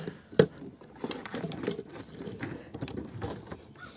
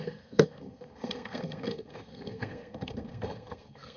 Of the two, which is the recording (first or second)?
first